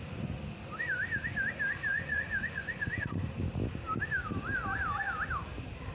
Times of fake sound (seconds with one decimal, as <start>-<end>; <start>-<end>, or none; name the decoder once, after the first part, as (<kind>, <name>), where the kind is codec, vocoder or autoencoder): 1.9-3.4 (vocoder, Vocos)